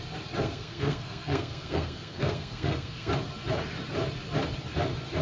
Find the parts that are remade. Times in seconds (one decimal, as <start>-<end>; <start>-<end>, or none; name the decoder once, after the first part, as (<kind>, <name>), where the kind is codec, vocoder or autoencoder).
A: 0.4-3.1 (codec, SNAC)

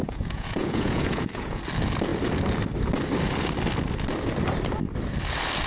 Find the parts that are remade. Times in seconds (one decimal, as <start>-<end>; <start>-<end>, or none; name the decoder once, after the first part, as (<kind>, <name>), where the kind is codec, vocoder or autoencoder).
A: 0.0-1.6 (vocoder, Vocos)

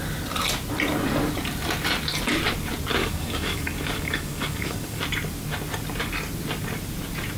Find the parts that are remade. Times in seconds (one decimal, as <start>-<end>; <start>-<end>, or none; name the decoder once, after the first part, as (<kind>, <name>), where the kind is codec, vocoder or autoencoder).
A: 3.0-5.0 (codec, DAC)

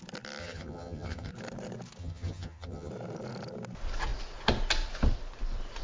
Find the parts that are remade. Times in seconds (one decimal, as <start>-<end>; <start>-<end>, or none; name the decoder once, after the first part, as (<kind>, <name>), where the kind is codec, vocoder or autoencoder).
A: 0.4-1.3 (vocoder, HiFi-GAN); 2.0-2.9

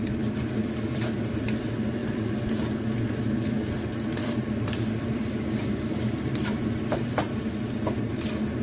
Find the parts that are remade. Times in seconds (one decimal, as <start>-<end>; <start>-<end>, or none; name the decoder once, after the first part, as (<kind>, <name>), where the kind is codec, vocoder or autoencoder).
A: 4.2-7.5 (vocoder, BigVGAN v2)

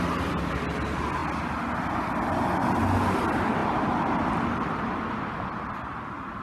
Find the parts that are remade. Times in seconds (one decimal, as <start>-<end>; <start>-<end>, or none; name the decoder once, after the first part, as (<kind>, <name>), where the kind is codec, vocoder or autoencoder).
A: 3.6-4.3 (vocoder, BigVGAN v2)

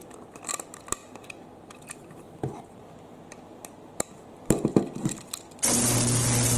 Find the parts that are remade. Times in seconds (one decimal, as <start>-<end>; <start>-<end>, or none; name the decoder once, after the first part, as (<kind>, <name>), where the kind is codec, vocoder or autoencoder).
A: none